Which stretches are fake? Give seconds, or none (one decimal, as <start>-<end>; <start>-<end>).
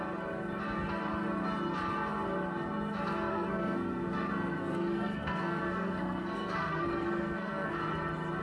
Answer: 3.3-7.7